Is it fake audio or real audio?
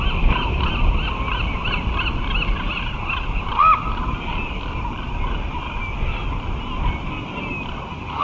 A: real